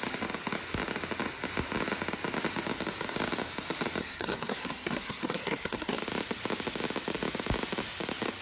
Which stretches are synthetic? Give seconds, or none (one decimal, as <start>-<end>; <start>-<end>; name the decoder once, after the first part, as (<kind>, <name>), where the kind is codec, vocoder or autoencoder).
4.0-6.0 (codec, SNAC)